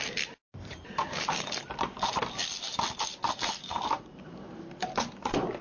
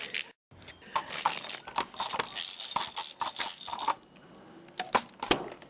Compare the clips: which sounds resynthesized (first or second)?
first